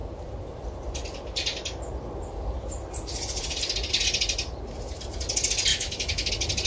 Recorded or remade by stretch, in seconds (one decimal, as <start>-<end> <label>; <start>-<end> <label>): 0.0-5.7 recorded; 5.7-6.3 remade; 6.3-6.7 recorded